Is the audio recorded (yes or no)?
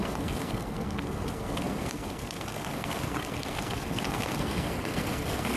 no